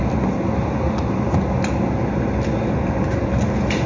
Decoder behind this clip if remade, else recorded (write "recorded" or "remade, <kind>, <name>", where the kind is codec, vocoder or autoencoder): recorded